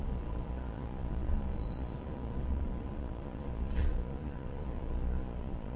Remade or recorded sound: remade